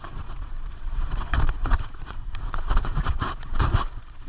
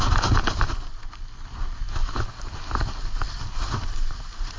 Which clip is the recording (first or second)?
second